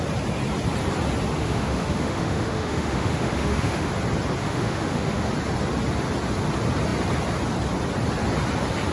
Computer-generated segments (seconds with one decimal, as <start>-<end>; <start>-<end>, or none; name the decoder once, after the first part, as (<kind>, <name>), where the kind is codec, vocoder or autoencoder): 1.4-3.9 (autoencoder, DAC-VAE); 4.4-5.3